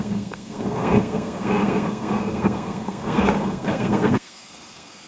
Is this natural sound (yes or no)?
no